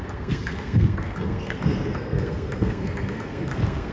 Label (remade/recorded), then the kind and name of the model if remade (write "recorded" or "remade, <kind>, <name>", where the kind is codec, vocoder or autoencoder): remade, codec, SNAC